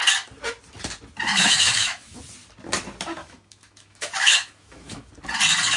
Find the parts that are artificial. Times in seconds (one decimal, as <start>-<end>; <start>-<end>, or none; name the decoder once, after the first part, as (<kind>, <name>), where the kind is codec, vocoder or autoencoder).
1.3-2.2 (autoencoder, DAC-VAE); 3.2-5.1